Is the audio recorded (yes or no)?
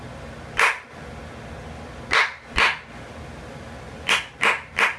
yes